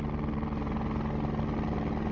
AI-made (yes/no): no